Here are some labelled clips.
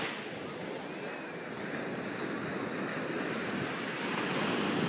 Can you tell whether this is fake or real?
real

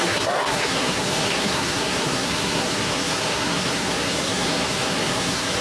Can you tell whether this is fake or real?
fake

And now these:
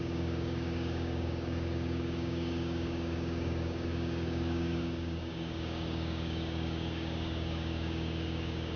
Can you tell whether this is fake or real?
fake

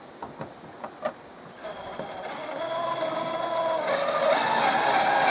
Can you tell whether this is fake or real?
real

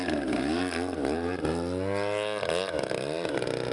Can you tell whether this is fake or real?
real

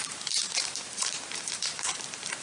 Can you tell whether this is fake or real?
fake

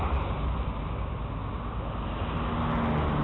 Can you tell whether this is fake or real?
real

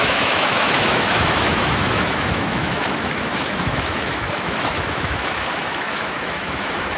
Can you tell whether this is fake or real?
fake